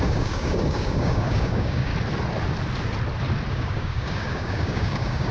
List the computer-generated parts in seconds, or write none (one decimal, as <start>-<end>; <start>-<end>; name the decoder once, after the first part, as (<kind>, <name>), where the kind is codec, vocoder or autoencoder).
0.0-1.9 (codec, DAC); 3.5-5.3